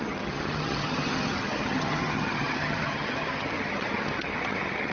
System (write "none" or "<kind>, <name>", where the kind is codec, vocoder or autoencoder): vocoder, HiFi-GAN